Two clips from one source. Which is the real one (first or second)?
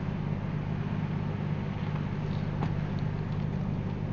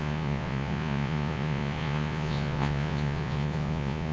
first